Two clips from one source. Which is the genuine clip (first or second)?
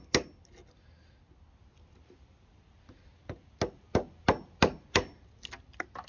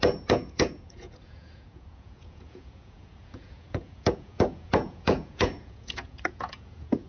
first